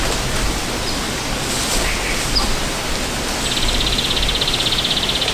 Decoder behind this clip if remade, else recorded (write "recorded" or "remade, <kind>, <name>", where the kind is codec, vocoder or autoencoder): recorded